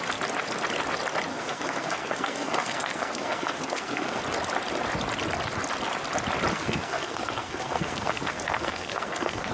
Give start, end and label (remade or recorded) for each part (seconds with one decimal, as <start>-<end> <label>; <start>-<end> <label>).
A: 0.0-1.3 recorded; 1.3-4.2 remade; 4.2-6.5 recorded; 6.5-9.5 remade